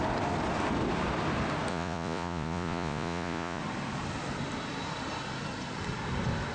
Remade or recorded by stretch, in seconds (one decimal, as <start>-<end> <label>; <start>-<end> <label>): 0.0-1.7 recorded; 1.7-3.6 remade; 3.6-6.5 recorded